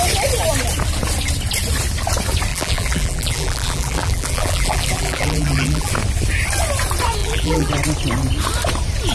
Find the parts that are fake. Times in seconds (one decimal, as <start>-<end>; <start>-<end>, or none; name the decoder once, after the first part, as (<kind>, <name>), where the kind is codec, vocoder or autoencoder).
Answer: 2.5-5.9 (vocoder, BigVGAN v2); 7.2-7.7